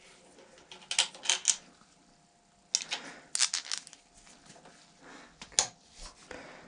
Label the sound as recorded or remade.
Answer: recorded